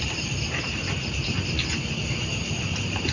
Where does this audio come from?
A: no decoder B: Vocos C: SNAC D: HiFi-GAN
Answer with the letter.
A